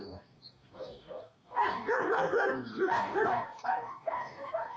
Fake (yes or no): yes